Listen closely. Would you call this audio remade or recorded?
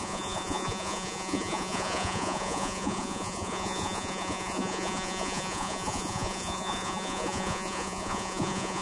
remade